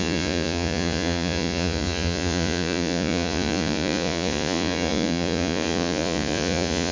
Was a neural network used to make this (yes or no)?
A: yes